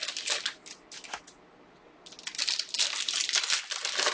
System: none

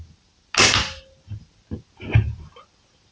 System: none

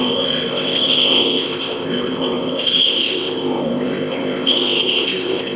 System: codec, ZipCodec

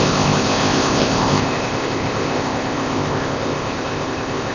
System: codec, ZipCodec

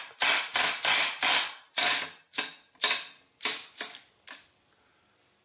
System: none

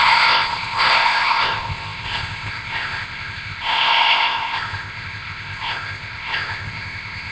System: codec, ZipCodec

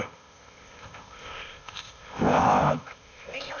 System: codec, ZipCodec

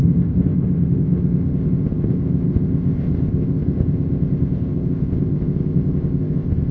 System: codec, ZipCodec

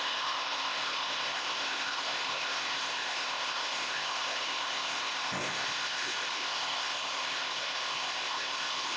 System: codec, ZipCodec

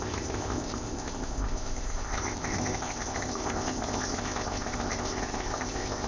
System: codec, ZipCodec